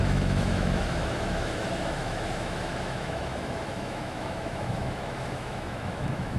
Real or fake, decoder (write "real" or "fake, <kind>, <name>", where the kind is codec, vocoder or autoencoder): fake, autoencoder, DAC-VAE